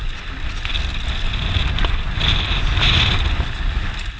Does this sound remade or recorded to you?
recorded